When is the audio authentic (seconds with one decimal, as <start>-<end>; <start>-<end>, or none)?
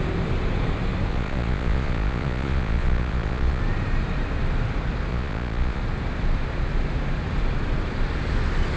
0.0-1.1; 3.6-5.1; 5.8-8.8